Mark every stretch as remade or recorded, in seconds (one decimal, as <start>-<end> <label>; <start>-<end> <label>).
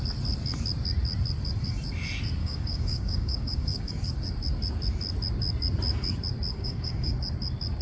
0.0-2.4 recorded; 2.4-3.9 remade; 3.9-6.5 recorded; 6.5-7.1 remade; 7.1-7.8 recorded